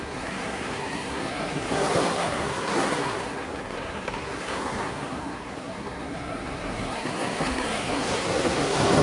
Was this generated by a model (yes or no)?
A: yes